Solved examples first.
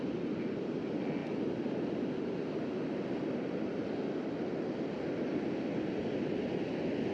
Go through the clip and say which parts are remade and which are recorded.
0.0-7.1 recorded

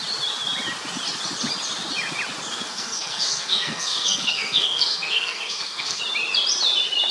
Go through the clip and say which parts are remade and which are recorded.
0.0-2.5 recorded; 2.5-6.0 remade; 6.0-7.1 recorded